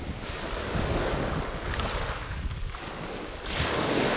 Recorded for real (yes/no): no